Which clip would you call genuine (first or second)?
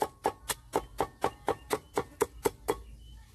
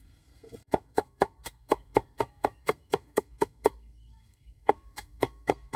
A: first